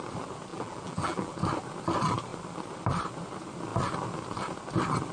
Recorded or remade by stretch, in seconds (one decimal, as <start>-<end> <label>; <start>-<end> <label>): 0.0-0.5 recorded; 0.5-1.3 remade; 1.3-5.1 recorded